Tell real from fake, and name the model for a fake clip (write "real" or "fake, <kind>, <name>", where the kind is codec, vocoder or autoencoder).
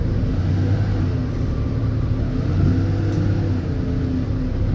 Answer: real